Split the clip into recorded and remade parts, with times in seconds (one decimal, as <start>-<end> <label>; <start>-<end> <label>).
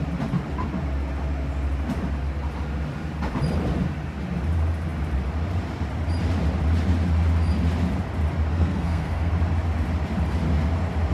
0.0-8.5 recorded; 8.5-9.3 remade; 9.3-11.1 recorded